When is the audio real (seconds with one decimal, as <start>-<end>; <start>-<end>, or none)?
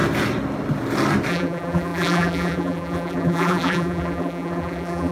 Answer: 0.0-1.3